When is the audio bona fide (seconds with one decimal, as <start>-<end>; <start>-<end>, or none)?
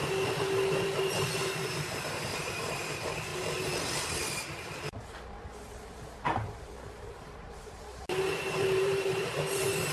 0.0-1.0; 3.3-6.9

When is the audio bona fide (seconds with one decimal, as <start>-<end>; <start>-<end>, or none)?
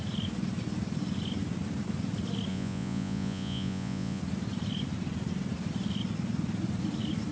0.0-2.5; 4.2-7.3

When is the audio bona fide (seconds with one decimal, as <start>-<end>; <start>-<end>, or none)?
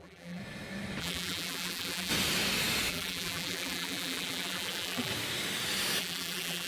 0.4-1.0; 2.1-2.9; 5.1-6.0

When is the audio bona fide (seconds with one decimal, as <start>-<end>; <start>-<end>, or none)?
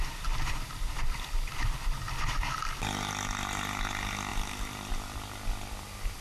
none